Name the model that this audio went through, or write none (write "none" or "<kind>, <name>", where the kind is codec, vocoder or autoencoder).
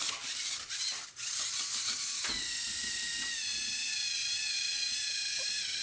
none